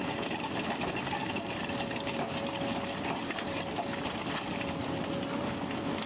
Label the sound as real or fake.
real